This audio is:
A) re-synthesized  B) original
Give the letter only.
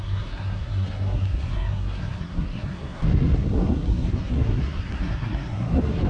A